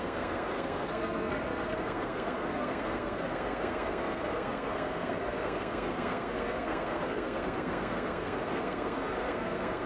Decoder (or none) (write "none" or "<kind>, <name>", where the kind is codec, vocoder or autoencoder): codec, SNAC